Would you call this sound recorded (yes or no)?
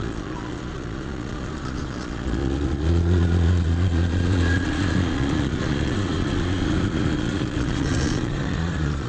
no